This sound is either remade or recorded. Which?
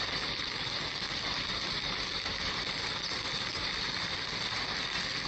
recorded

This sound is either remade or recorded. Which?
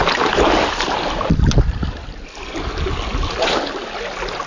recorded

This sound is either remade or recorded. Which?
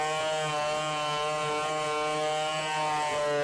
recorded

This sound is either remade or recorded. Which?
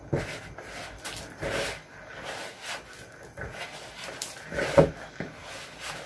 recorded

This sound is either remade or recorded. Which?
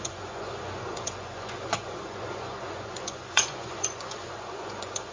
remade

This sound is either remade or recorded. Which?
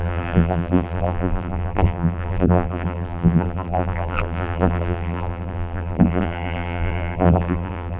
remade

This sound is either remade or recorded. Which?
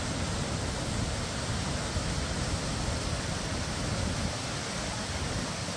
recorded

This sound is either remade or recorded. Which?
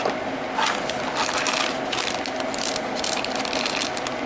recorded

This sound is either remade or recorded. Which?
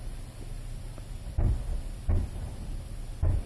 recorded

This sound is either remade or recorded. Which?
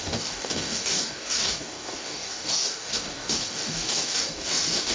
remade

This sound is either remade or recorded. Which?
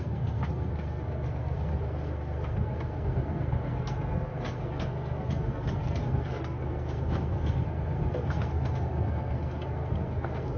remade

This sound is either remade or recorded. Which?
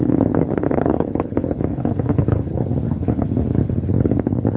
remade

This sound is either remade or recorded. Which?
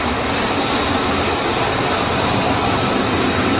recorded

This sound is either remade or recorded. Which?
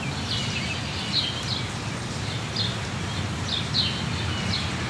recorded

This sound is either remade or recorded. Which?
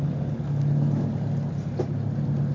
recorded